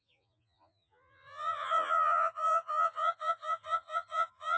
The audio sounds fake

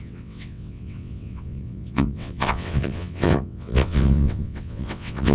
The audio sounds fake